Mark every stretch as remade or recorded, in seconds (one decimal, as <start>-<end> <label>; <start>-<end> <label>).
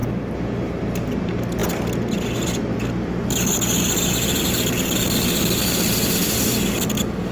0.0-7.3 recorded